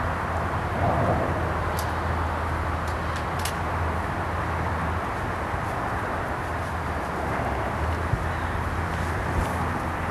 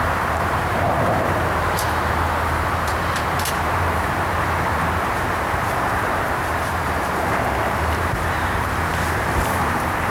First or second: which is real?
first